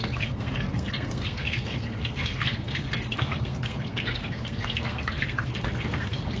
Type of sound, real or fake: fake